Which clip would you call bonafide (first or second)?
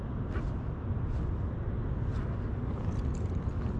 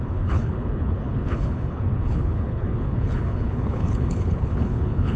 first